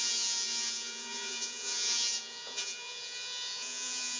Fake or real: fake